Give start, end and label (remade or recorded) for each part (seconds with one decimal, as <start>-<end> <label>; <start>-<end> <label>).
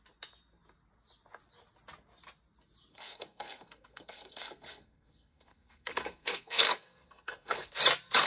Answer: 0.0-2.9 recorded; 2.9-7.7 remade; 7.7-8.3 recorded